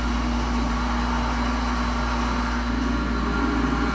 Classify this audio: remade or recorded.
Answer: recorded